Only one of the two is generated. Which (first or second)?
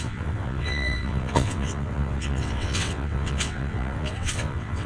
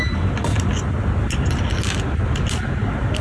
first